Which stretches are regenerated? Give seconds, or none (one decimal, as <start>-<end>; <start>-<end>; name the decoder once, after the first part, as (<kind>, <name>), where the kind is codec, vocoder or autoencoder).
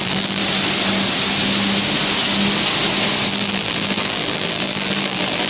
0.0-0.4 (vocoder, BigVGAN v2); 3.3-5.5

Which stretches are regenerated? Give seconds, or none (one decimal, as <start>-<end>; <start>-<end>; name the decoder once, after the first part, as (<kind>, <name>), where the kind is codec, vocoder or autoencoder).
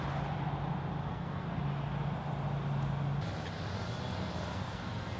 1.0-1.6 (codec, SNAC); 4.5-5.2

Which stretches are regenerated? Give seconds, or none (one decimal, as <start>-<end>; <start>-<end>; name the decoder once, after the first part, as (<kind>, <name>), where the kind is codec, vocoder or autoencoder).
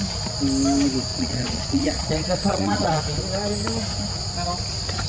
1.1-3.0 (vocoder, Vocos)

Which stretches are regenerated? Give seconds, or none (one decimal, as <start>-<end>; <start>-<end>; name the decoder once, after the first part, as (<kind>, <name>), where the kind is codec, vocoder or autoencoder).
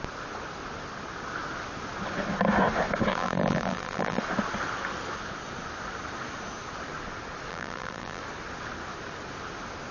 3.1-4.2 (vocoder, BigVGAN v2); 7.5-8.2